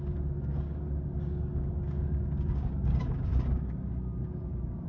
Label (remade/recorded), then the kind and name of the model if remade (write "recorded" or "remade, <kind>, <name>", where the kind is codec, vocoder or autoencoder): remade, codec, DAC